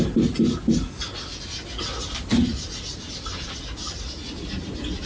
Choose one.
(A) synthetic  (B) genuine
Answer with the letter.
B